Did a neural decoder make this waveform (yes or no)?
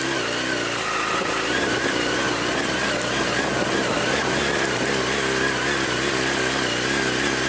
no